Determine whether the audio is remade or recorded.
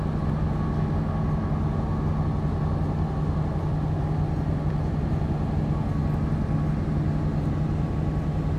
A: recorded